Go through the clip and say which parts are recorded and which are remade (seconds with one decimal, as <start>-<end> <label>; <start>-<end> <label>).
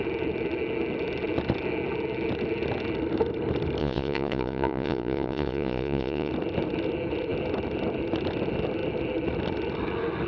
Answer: 0.0-3.8 recorded; 3.8-6.3 remade; 6.3-10.3 recorded